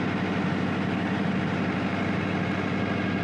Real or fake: real